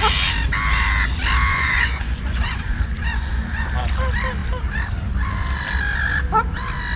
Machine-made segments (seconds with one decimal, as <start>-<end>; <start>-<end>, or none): 1.5-3.7